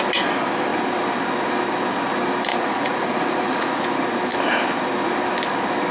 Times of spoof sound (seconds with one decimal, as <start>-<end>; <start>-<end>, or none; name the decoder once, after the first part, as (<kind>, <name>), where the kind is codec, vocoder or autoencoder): 2.5-3.7 (vocoder, Vocos)